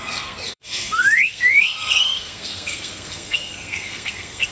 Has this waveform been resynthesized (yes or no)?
yes